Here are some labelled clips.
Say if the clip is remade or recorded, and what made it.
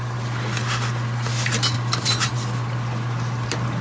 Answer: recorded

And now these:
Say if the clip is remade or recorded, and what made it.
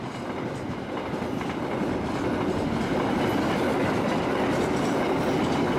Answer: recorded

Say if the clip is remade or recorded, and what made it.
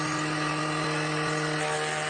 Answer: recorded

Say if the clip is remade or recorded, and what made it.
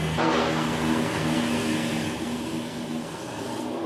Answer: remade, codec, SNAC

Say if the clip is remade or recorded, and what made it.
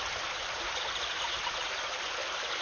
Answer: recorded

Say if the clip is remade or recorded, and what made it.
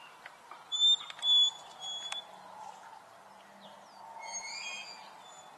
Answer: recorded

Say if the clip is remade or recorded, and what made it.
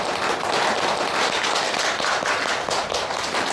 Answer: recorded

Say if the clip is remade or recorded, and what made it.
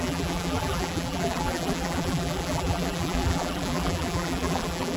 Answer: remade, vocoder, BigVGAN v2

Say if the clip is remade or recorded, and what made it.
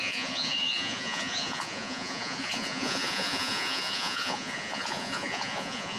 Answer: remade, vocoder, Vocos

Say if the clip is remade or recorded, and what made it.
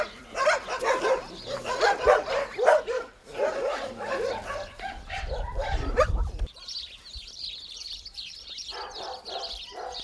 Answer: remade, vocoder, BigVGAN v2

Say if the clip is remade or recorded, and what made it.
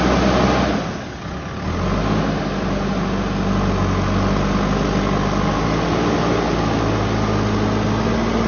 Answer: recorded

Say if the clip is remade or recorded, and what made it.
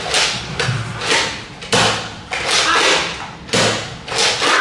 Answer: recorded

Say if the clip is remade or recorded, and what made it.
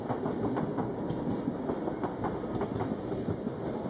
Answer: recorded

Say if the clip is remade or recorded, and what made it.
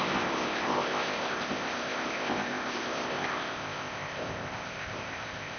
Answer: remade, codec, ZipCodec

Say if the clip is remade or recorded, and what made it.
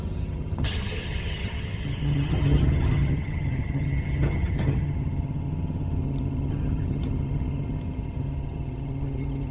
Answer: remade, vocoder, HiFi-GAN